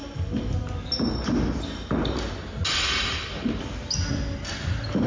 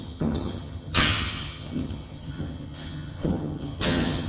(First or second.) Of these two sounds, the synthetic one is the second